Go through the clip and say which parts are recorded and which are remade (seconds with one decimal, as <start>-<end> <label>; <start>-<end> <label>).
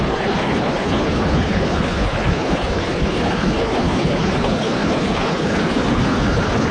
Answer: 0.0-6.7 remade